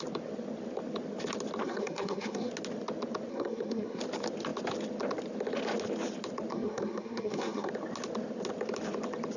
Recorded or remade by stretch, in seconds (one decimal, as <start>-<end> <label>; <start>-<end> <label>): 0.0-1.6 recorded; 1.6-2.5 remade; 2.5-3.3 recorded; 3.3-4.0 remade; 4.0-6.5 recorded; 6.5-7.7 remade; 7.7-9.4 recorded